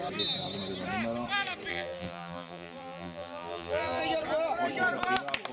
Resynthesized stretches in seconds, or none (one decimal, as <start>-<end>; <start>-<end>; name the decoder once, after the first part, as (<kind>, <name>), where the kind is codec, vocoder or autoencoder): 1.7-4.0 (vocoder, BigVGAN v2)